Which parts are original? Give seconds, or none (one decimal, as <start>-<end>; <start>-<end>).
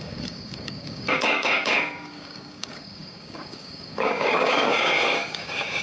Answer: none